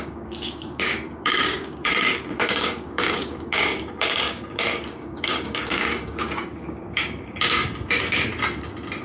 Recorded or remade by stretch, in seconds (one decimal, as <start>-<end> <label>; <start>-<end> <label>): 0.0-8.3 remade; 8.3-9.0 recorded